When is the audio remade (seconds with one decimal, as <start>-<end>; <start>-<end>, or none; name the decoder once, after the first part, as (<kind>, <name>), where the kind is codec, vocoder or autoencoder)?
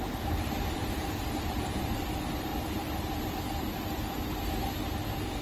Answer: none